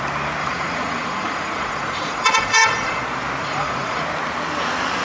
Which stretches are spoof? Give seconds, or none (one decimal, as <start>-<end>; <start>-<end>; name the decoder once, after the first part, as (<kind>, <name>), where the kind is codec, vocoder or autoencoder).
0.4-3.0 (vocoder, Vocos); 3.4-4.0